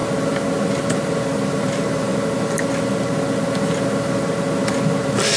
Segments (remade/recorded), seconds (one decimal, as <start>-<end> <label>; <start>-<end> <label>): 0.0-1.5 recorded; 1.5-2.1 remade; 2.1-5.4 recorded